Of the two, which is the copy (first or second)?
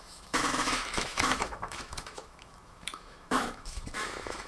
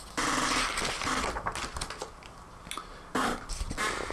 first